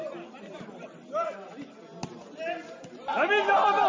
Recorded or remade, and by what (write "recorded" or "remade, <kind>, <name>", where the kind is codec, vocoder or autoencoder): recorded